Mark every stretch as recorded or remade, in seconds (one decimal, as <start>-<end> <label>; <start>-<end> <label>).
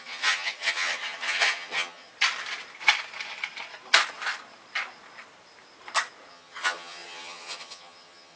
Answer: 0.0-2.1 remade; 2.1-6.3 recorded; 6.3-8.4 remade